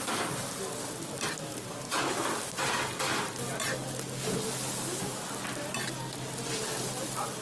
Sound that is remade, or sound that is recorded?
recorded